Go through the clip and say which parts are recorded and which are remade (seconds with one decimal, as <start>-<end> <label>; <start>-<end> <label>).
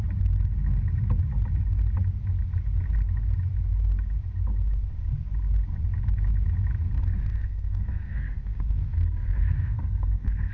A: 0.0-7.3 recorded; 7.3-10.5 remade